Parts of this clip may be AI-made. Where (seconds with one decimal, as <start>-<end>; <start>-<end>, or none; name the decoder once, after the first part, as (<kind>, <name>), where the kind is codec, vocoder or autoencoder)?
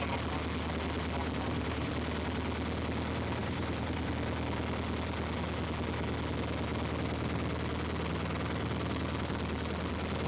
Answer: 1.2-1.9 (vocoder, BigVGAN v2); 3.4-4.1